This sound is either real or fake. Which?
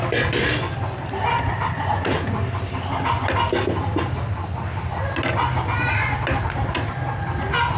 real